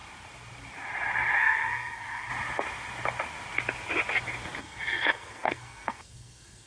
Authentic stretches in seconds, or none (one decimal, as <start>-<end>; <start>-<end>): 0.0-1.4; 2.3-4.6